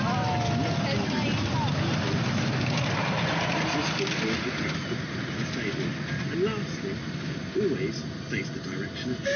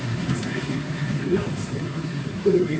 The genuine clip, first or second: first